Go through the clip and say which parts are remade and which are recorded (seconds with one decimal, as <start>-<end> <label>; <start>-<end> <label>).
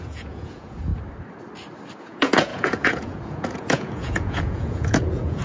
0.0-0.9 remade; 0.9-2.0 recorded; 2.0-5.4 remade